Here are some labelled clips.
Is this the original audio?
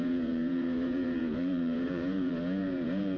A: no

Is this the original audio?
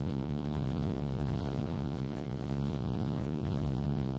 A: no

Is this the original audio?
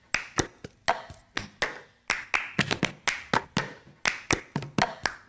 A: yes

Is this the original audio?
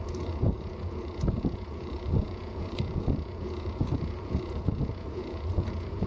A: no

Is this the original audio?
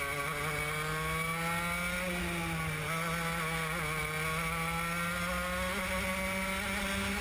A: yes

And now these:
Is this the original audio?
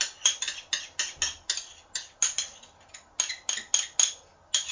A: yes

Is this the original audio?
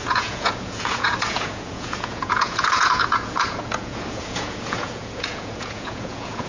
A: no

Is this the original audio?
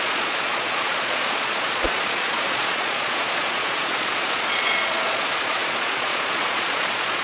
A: no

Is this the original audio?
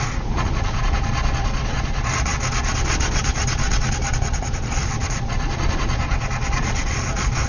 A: no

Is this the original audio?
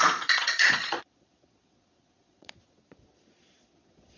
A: no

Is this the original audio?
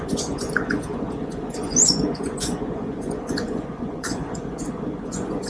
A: no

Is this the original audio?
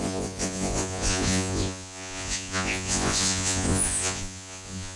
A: no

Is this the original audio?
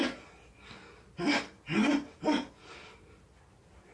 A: yes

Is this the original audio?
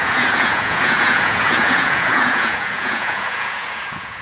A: no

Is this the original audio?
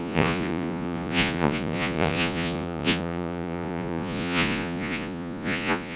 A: no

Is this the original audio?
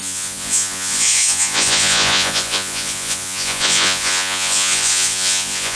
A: no